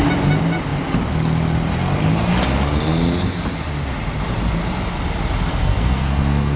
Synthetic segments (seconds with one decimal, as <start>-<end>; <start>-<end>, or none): 5.5-6.6